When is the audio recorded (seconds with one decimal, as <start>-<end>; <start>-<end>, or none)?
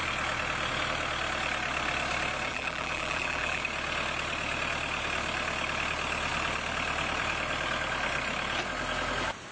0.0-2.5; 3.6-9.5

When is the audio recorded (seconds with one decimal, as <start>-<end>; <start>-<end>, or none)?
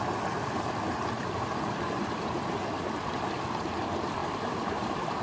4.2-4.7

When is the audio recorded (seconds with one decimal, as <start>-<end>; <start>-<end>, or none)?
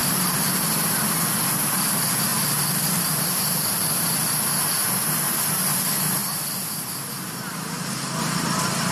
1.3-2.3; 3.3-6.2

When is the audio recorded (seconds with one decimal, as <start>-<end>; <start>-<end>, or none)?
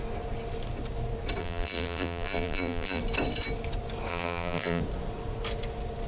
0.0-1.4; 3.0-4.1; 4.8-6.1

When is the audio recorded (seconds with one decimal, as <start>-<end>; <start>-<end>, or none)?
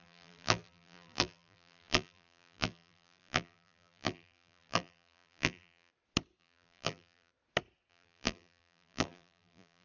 5.9-6.4; 7.3-7.9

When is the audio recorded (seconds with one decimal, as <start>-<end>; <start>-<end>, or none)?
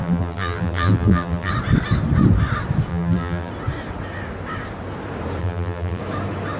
1.5-2.9; 3.5-5.4; 6.0-6.6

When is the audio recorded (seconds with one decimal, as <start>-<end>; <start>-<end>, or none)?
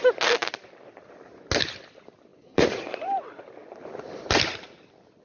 0.0-2.3; 3.3-5.2